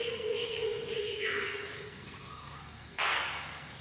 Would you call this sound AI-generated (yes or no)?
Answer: yes